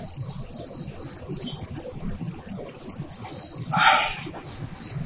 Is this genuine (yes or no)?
yes